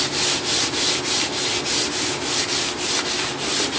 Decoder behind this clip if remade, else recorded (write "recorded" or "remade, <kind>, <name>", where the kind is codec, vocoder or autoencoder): recorded